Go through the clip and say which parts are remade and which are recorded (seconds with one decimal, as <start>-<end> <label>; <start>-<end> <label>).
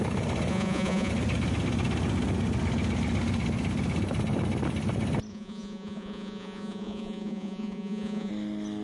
0.0-0.5 recorded; 0.5-1.1 remade; 1.1-5.3 recorded; 5.3-8.3 remade; 8.3-8.8 recorded